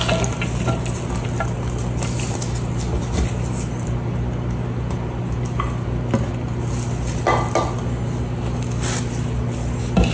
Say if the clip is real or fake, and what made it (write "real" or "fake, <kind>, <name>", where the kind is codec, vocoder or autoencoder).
real